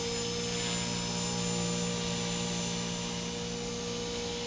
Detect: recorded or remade recorded